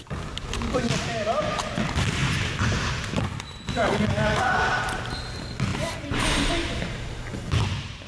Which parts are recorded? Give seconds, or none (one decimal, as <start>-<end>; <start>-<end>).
0.0-5.7; 6.5-7.3